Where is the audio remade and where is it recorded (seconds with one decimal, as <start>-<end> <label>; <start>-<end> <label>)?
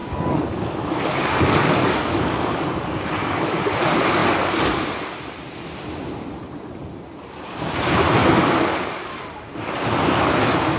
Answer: 0.0-3.6 remade; 3.6-8.2 recorded; 8.2-9.2 remade; 9.2-10.8 recorded